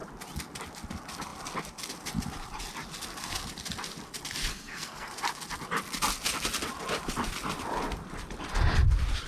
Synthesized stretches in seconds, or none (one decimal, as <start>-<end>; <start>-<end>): 4.5-5.1